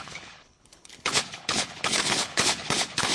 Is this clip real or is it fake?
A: fake